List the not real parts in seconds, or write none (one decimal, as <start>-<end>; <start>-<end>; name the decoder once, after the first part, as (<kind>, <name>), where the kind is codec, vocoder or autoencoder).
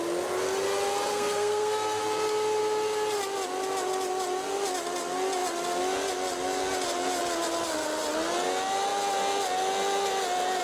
1.1-2.0 (codec, SNAC)